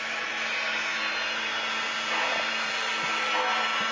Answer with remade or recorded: recorded